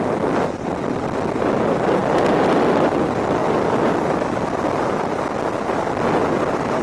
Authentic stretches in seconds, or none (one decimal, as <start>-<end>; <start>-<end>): 0.0-6.8